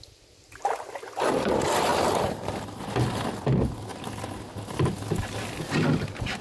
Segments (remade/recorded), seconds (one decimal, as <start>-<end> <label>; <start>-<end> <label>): 0.0-1.9 recorded; 1.9-3.3 remade; 3.3-6.4 recorded